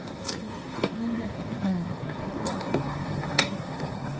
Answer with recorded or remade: remade